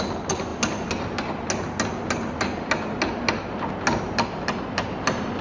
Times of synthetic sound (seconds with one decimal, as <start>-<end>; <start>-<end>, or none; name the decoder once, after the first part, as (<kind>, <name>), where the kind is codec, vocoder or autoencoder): none